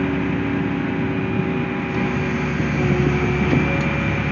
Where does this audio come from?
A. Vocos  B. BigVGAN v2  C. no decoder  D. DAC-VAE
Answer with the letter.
C